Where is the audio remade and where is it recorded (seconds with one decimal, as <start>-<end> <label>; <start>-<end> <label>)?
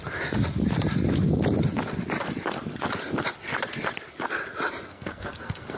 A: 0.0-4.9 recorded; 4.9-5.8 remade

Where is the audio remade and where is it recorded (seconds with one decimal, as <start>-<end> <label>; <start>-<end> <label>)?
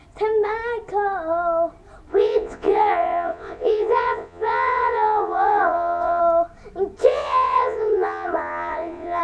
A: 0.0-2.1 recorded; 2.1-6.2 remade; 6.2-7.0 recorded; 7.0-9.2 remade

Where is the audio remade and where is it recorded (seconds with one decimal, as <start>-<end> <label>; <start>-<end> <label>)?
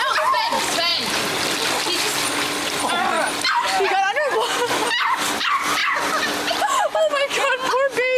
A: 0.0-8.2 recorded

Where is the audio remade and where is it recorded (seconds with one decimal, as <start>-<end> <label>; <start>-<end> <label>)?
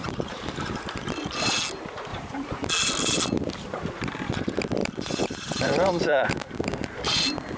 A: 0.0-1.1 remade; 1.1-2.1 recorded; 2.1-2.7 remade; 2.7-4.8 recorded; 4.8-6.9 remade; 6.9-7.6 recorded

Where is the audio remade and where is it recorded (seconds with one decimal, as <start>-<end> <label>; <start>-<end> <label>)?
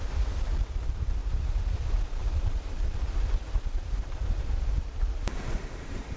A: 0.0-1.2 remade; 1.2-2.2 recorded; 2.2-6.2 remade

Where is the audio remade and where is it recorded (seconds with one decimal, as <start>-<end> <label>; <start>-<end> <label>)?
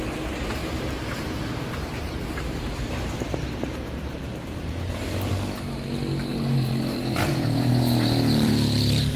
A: 0.0-0.6 recorded; 0.6-5.3 remade; 5.3-6.3 recorded; 6.3-9.2 remade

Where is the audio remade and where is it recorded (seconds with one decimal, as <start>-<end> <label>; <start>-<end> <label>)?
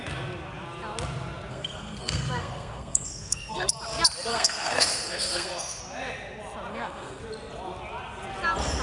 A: 0.0-1.5 recorded; 1.5-3.7 remade; 3.7-4.3 recorded; 4.3-5.8 remade; 5.8-6.7 recorded; 6.7-7.2 remade; 7.2-8.8 recorded